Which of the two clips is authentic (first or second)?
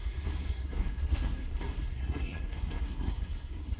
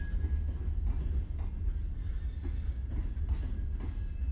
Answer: second